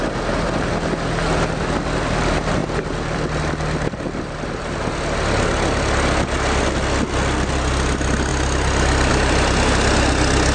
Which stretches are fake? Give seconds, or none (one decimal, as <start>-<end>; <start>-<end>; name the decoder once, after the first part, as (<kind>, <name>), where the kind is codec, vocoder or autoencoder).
2.6-4.8 (vocoder, BigVGAN v2)